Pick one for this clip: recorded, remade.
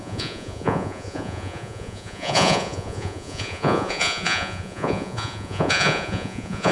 remade